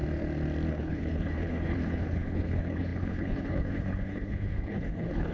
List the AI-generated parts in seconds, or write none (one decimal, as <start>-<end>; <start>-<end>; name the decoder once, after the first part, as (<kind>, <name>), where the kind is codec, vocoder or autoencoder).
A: 0.7-5.3 (codec, HILCodec)